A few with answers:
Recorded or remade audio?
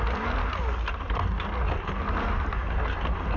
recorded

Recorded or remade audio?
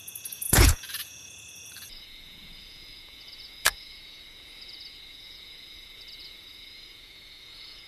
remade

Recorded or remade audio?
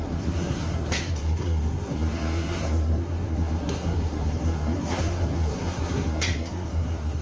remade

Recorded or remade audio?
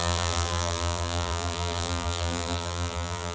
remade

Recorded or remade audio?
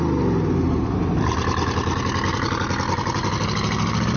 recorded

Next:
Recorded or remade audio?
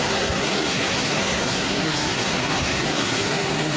remade